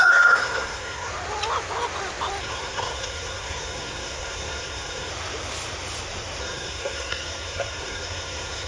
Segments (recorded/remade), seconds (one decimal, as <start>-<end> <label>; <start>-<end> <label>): 0.0-1.1 remade; 1.1-2.4 recorded; 2.4-5.1 remade; 5.1-6.4 recorded; 6.4-8.7 remade